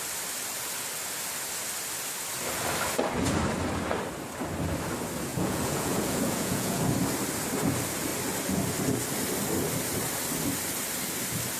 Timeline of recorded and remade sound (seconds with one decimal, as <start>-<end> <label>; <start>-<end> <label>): 0.0-5.3 recorded; 5.3-6.8 remade; 6.8-11.6 recorded